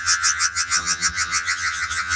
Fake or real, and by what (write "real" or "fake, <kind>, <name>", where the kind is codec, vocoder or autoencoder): fake, vocoder, HiFi-GAN